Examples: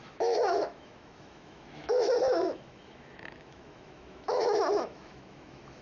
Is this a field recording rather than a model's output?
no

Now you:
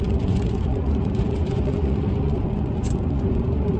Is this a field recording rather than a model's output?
no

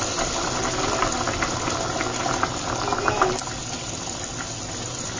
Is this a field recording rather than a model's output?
yes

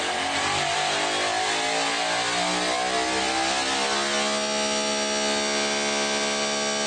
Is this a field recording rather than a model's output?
yes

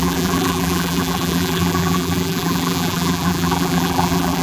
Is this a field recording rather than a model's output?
no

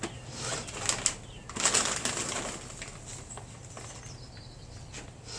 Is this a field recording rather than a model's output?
yes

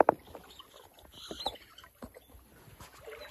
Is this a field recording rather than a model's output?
yes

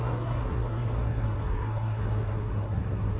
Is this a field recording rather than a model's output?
no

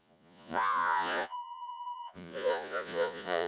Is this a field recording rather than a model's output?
no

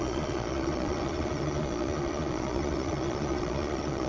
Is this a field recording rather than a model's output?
no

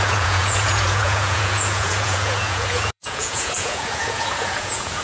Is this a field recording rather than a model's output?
no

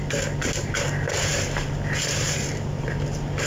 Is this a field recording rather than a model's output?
yes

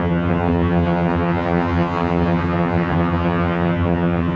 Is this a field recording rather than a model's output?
no